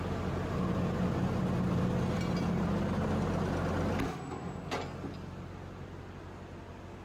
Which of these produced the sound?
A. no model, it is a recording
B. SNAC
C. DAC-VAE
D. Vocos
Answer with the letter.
A